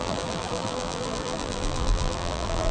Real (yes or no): no